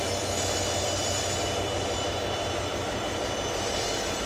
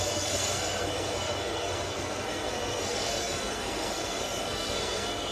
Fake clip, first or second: second